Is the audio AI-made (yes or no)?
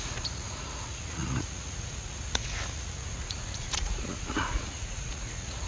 yes